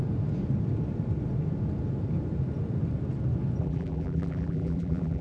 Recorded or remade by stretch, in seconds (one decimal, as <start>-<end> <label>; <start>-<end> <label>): 0.0-3.6 recorded; 3.6-5.2 remade